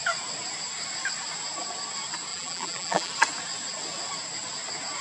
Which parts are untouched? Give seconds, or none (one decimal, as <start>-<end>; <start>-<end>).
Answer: 0.0-2.3; 3.1-5.0

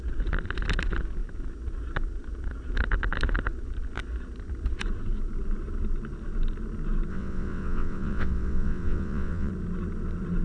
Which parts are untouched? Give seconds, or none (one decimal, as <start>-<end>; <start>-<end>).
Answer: 0.0-7.1; 9.5-10.4

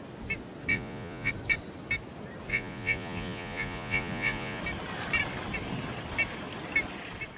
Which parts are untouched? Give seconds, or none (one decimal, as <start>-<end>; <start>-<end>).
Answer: 0.0-0.7; 1.3-2.5; 4.6-7.4

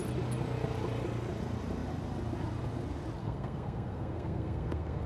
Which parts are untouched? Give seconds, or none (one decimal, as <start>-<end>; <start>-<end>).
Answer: 0.0-3.2

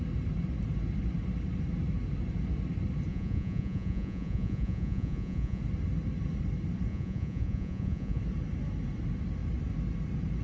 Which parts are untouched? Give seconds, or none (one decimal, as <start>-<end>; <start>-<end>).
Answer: 0.0-3.1; 5.6-6.9; 8.2-10.4